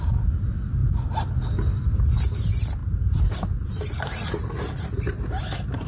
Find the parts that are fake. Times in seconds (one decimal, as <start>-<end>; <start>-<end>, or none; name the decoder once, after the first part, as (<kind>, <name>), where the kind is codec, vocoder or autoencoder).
2.8-5.4 (vocoder, BigVGAN v2)